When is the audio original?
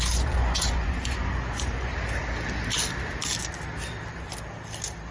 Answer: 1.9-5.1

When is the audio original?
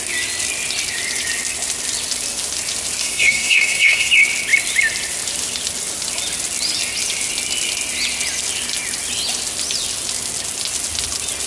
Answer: 0.0-3.0; 4.1-11.5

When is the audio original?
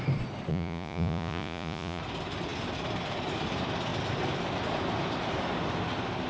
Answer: 0.0-0.5; 2.0-6.3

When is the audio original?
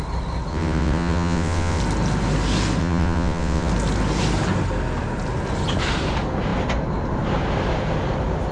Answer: 0.0-0.5; 1.8-2.8; 3.7-8.5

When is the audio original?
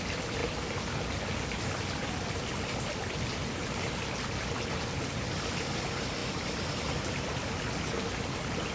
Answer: 0.0-6.2; 7.6-8.7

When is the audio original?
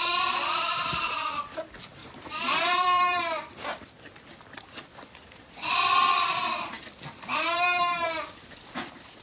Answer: 0.0-2.0; 3.2-4.9; 8.2-9.2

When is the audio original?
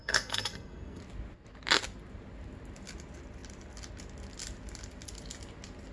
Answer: 1.0-5.9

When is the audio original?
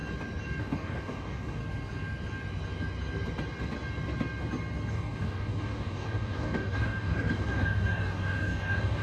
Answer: 0.0-0.6; 1.6-4.9